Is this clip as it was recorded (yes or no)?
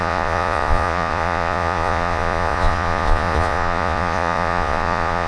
no